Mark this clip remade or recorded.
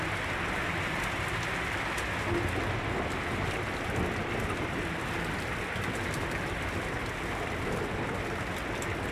recorded